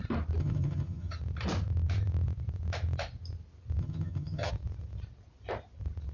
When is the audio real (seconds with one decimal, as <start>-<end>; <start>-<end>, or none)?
0.0-0.4; 1.2-3.8; 4.5-6.1